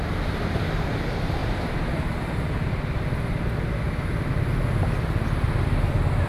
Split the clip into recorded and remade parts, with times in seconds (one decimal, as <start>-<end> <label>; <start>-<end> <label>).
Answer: 0.0-6.3 recorded